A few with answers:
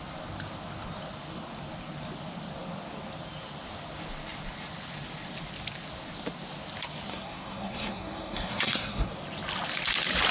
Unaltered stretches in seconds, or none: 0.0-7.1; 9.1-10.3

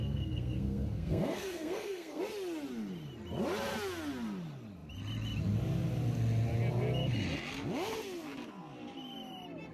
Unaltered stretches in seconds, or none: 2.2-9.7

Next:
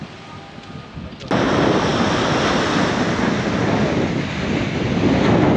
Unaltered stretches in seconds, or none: 0.0-5.6

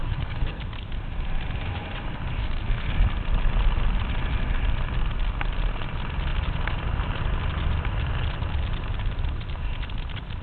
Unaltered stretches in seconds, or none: 0.6-2.4; 2.9-10.4

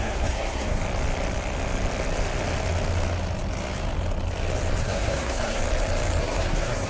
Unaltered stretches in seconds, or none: 0.8-4.8; 5.6-6.2